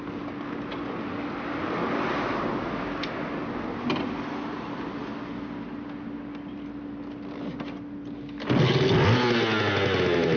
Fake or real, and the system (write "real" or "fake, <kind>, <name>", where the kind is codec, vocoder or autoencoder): real